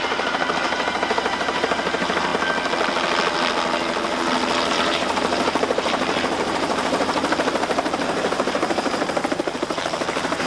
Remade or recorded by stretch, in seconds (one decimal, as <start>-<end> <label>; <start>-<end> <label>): 0.0-2.3 remade; 2.3-4.7 recorded; 4.7-10.5 remade